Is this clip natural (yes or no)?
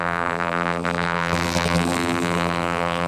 no